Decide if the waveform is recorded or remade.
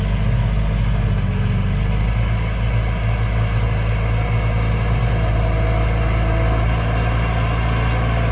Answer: recorded